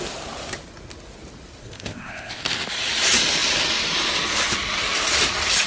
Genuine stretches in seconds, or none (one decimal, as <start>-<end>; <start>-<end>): 0.0-1.6; 2.4-5.7